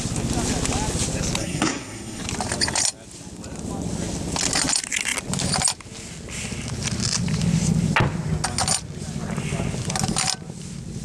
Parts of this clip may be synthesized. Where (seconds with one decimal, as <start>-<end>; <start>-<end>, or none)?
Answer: 1.4-2.2